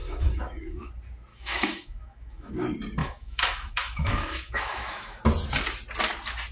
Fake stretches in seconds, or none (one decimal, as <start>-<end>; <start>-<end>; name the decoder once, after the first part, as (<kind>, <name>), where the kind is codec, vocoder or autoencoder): 0.0-0.9 (autoencoder, DAC-VAE); 1.3-2.5; 3.0-5.2